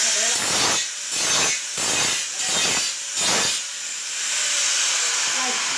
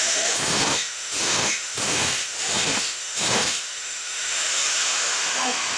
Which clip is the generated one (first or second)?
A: second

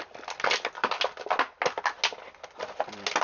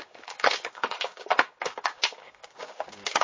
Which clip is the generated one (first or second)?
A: second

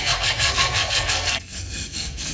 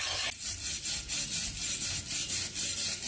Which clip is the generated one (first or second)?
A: first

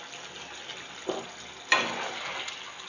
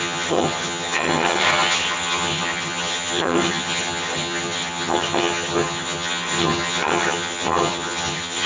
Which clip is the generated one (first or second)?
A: second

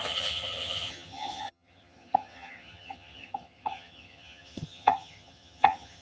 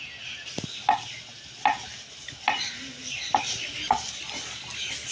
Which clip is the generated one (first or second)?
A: first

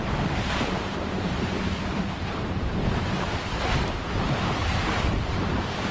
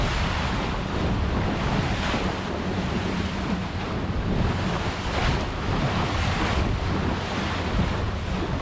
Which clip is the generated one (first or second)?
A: first